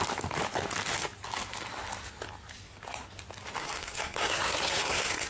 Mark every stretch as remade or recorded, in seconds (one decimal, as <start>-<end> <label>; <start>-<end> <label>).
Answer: 0.0-3.6 recorded; 3.6-5.3 remade